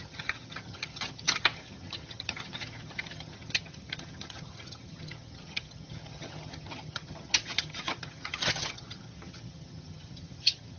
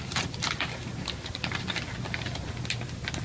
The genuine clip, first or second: second